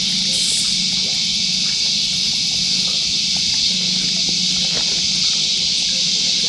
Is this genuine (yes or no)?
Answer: yes